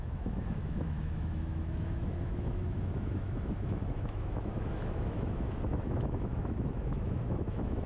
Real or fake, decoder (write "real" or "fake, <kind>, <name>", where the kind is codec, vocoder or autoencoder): fake, autoencoder, DAC-VAE